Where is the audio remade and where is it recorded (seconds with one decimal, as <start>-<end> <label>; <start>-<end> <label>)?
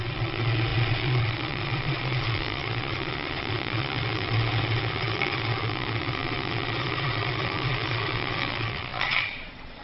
0.0-9.8 remade